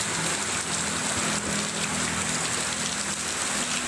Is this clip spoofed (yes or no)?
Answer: no